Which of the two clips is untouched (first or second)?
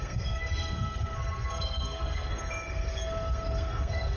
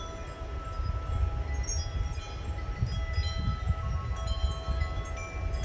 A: second